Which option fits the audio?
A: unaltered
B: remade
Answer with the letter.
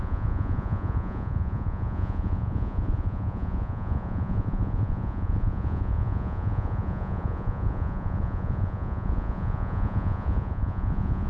B